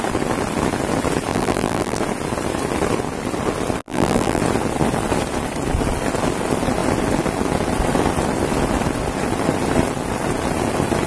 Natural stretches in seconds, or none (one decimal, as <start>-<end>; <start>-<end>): 0.0-1.3; 2.0-3.8; 4.4-11.1